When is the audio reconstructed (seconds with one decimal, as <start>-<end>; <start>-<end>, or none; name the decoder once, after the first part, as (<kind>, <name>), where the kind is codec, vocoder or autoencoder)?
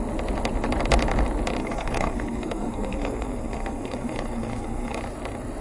1.6-5.0 (codec, SNAC)